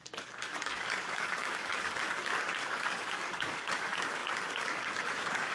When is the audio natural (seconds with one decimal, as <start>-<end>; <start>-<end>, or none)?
none